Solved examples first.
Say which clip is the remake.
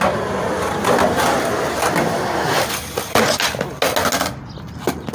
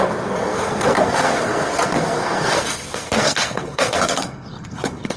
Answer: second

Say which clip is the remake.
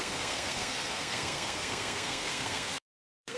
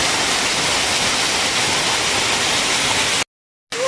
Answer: first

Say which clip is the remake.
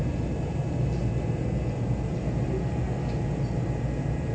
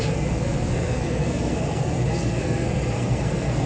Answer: second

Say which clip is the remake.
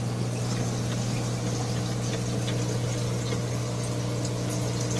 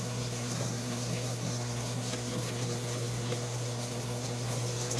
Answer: second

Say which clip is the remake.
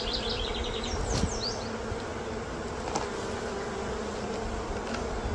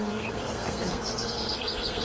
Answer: second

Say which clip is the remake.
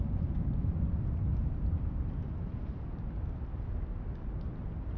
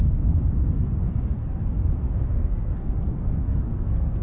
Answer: second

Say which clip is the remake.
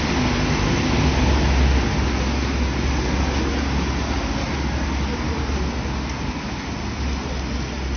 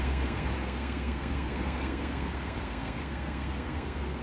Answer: second